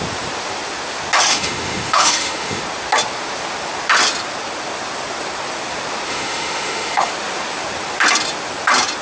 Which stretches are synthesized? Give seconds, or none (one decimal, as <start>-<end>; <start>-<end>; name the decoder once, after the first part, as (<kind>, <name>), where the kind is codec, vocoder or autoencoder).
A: 1.3-2.6 (autoencoder, DAC-VAE); 6.1-7.1

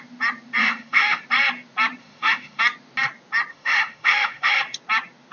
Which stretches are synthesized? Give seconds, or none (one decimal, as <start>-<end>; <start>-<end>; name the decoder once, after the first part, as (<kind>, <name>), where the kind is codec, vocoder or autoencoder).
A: 0.6-1.2 (autoencoder, DAC-VAE); 2.0-2.6; 3.5-4.6

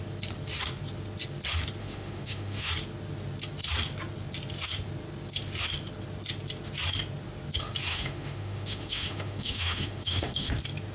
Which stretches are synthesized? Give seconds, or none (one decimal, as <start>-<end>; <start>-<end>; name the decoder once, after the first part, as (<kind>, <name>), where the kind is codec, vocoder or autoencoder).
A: 1.8-2.7 (autoencoder, DAC-VAE); 7.9-10.5

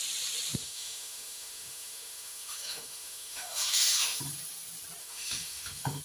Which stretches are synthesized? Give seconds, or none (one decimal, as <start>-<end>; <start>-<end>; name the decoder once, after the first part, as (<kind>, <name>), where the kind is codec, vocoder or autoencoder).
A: 0.6-4.2 (autoencoder, DAC-VAE); 5.0-6.0

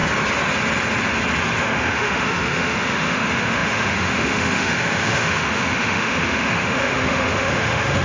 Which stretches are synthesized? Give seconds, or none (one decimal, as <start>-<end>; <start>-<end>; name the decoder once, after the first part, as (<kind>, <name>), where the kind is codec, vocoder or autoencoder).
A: 1.6-8.0 (autoencoder, DAC-VAE)

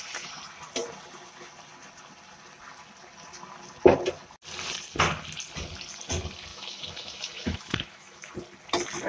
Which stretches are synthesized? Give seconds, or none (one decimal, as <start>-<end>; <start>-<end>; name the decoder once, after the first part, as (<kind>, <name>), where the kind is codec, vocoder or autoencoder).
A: 6.5-8.3 (autoencoder, DAC-VAE)

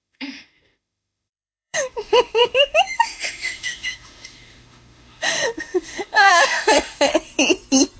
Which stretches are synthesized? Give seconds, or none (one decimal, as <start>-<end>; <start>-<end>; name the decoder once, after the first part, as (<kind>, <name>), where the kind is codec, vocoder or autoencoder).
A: 0.0-7.1 (autoencoder, DAC-VAE)